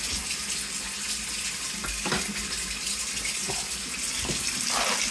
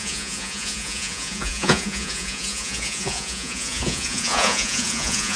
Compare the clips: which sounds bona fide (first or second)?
first